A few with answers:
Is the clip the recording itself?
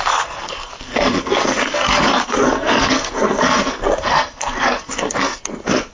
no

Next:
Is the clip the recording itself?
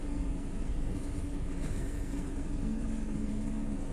no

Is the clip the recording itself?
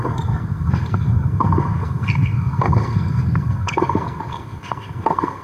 no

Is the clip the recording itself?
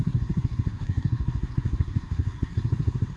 no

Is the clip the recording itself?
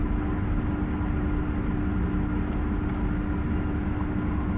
yes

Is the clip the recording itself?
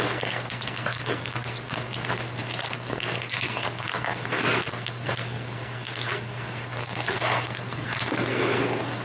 no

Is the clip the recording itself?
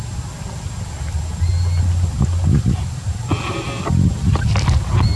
yes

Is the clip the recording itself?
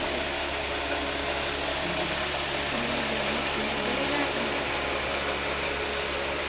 yes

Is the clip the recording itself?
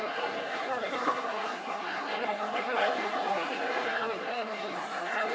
no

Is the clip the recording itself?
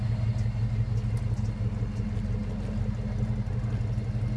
yes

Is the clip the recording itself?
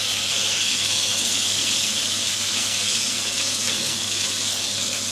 no